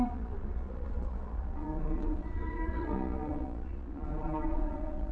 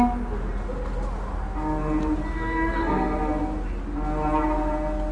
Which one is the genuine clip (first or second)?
second